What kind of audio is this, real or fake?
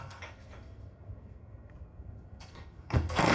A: fake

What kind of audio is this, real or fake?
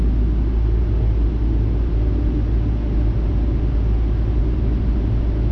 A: real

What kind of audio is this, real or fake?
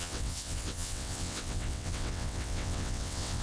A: fake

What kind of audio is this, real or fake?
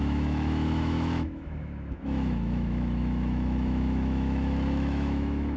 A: fake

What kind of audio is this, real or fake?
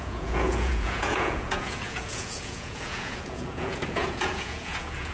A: fake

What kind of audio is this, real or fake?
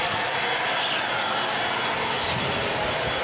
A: real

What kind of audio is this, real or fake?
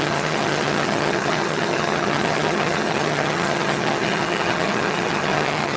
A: fake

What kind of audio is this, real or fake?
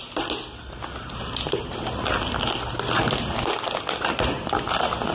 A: real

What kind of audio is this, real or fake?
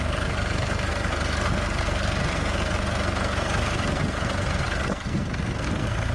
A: fake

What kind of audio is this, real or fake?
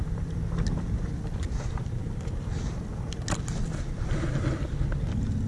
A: real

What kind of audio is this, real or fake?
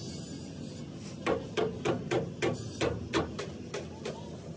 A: real